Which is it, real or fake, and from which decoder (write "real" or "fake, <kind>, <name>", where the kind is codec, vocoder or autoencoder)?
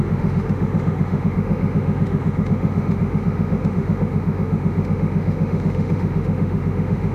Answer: fake, autoencoder, DAC-VAE